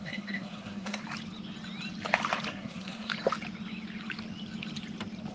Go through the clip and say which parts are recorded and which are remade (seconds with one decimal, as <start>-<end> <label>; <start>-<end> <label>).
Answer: 0.0-1.0 remade; 1.0-2.5 recorded; 2.5-3.1 remade; 3.1-5.3 recorded